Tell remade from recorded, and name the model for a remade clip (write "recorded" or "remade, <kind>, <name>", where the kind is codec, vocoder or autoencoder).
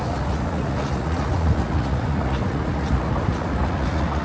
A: remade, vocoder, Vocos